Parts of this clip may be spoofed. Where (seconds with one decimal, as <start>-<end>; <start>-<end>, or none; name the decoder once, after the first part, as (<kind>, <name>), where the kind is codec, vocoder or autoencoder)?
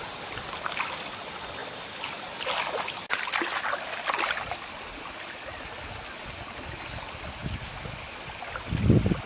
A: none